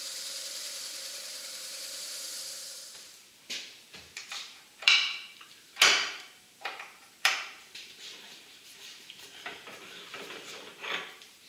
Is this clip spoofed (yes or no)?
yes